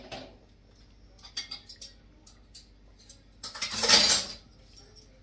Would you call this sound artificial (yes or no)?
no